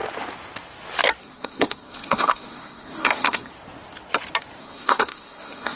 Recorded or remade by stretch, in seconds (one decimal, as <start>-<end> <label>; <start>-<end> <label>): 0.0-1.2 recorded; 1.2-3.5 remade; 3.5-4.6 recorded; 4.6-5.8 remade